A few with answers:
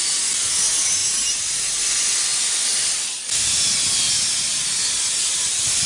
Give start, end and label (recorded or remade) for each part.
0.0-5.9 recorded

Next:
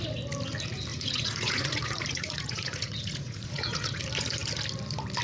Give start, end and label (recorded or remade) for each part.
0.0-0.9 recorded; 0.9-4.0 remade; 4.0-5.2 recorded

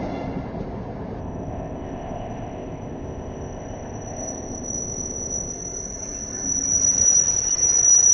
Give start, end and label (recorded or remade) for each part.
0.0-1.2 recorded; 1.2-5.5 remade; 5.5-8.1 recorded